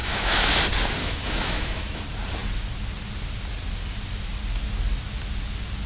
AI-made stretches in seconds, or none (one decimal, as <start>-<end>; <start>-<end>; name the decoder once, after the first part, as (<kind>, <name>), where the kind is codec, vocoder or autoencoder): 0.0-0.6 (autoencoder, DAC-VAE); 1.0-2.0